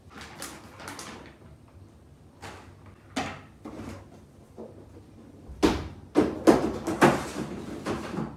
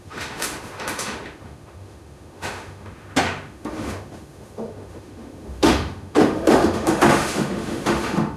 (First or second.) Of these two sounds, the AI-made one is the second